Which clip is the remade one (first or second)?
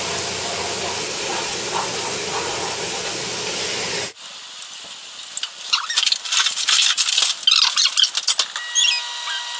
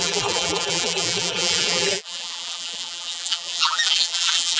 second